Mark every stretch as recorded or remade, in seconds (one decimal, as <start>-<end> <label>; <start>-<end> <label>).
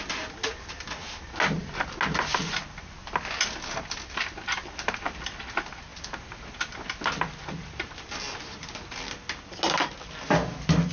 0.0-10.9 recorded